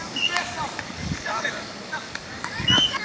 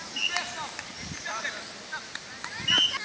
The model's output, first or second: first